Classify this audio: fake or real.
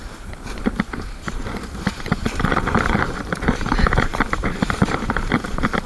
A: fake